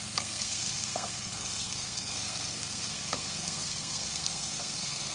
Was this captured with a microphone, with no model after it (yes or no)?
no